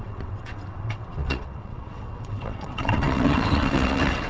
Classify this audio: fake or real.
fake